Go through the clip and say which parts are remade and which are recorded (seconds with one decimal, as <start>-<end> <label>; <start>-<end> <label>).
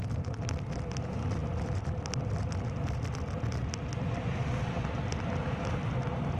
0.0-6.4 recorded